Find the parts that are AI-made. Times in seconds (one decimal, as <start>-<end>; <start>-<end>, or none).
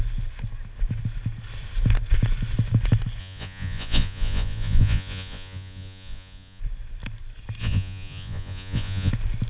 3.2-6.6; 7.6-9.1